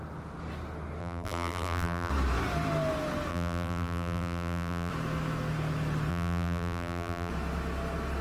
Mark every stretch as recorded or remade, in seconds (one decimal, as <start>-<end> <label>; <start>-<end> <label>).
0.0-1.0 recorded; 1.0-2.1 remade; 2.1-3.3 recorded; 3.3-4.9 remade; 4.9-6.1 recorded; 6.1-7.3 remade; 7.3-8.2 recorded